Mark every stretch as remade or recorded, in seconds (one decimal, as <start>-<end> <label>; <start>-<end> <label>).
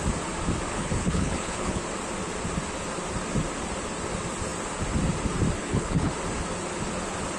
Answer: 0.0-0.7 recorded; 0.7-1.8 remade; 1.8-5.6 recorded; 5.6-6.1 remade; 6.1-7.4 recorded